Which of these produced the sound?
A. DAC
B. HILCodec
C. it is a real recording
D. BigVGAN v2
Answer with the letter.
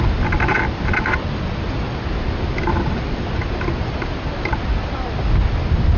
C